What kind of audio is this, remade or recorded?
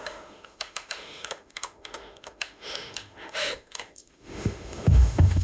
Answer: remade